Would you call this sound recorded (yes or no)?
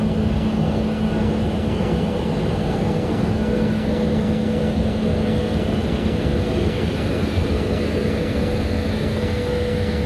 no